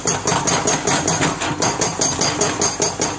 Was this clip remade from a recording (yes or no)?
no